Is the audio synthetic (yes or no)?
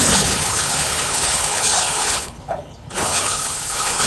yes